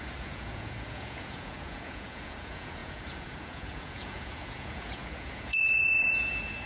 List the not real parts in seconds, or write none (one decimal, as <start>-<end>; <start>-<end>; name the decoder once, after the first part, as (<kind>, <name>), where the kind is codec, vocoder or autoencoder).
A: 0.0-6.7 (vocoder, Vocos)